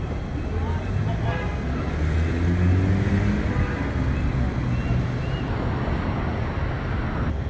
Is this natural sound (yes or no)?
yes